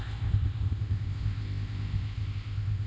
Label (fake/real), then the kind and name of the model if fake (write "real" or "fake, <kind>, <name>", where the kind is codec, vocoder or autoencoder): fake, codec, ZipCodec